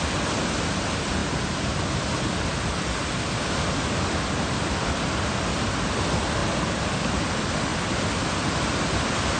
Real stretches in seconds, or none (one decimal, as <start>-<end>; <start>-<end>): 0.0-9.4